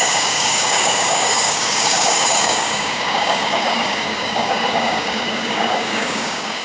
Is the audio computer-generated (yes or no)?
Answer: yes